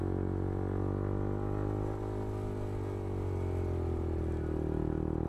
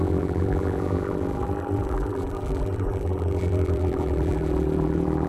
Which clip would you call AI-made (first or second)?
second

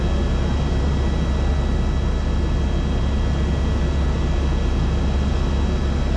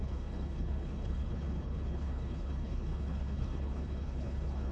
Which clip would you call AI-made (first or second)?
second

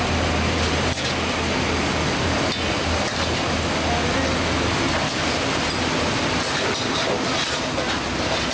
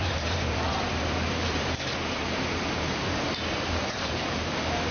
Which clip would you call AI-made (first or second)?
second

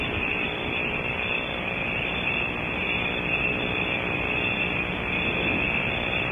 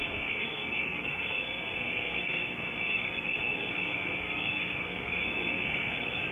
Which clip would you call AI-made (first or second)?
second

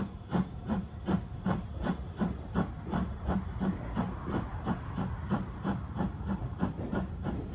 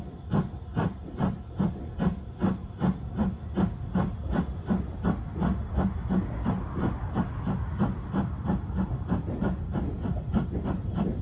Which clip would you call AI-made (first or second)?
first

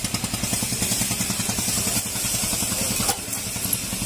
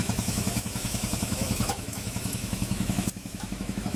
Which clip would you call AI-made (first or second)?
second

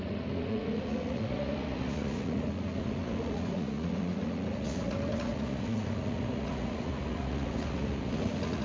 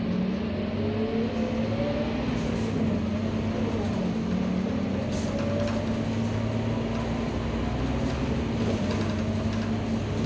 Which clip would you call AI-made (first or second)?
first